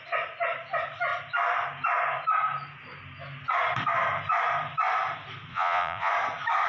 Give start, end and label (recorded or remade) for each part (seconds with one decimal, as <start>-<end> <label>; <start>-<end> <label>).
0.0-5.5 recorded; 5.5-6.1 remade; 6.1-6.7 recorded